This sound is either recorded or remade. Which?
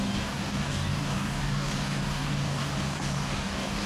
remade